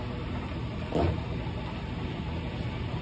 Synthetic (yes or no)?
no